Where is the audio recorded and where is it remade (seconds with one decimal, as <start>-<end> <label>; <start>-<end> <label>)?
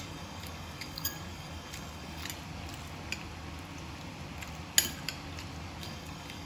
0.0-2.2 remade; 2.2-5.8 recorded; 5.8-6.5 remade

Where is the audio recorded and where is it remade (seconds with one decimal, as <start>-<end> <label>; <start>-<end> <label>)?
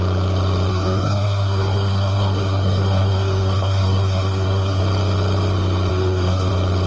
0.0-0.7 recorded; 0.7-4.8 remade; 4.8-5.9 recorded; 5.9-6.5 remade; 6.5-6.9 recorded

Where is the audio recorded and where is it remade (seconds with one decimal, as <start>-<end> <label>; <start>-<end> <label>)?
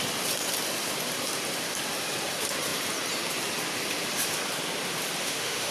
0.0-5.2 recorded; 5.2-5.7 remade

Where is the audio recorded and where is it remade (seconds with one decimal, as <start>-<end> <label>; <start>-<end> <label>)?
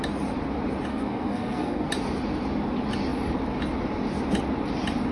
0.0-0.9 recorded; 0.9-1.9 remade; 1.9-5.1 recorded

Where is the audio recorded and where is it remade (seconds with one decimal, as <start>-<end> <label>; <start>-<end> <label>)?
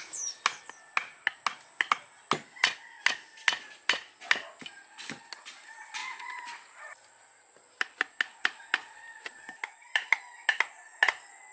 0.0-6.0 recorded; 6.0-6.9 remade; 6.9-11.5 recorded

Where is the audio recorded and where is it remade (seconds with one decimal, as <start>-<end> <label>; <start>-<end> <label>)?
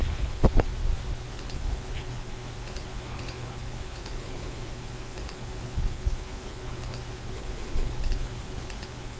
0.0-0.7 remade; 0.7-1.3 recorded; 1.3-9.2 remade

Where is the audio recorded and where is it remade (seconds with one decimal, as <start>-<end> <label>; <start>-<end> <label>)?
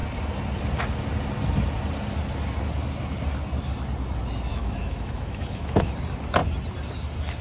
0.0-4.5 recorded; 4.5-5.9 remade; 5.9-7.4 recorded